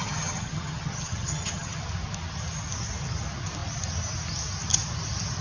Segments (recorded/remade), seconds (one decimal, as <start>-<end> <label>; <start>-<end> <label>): 0.0-1.8 remade; 1.8-5.4 recorded